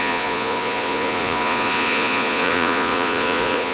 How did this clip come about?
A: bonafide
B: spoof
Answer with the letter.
B